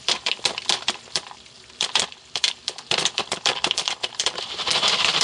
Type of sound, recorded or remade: remade